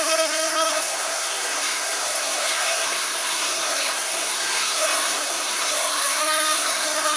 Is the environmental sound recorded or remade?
remade